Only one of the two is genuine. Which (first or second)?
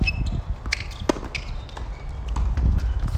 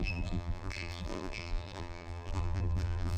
first